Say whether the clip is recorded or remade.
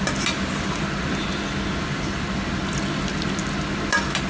recorded